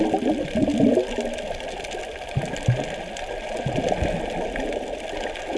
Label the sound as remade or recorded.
recorded